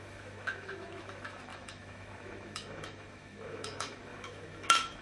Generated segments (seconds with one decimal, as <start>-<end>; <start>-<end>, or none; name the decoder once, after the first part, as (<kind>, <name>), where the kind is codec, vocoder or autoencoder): 0.0-5.0 (autoencoder, DAC-VAE)